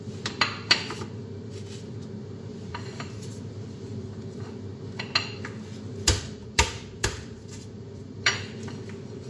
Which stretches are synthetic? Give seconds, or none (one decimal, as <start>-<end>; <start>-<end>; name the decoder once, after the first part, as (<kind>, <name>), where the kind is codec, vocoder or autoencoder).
2.5-4.1 (vocoder, BigVGAN v2); 6.4-8.4